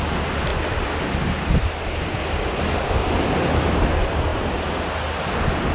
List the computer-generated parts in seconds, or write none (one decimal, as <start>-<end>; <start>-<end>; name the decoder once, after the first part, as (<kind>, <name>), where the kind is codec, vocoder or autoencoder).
none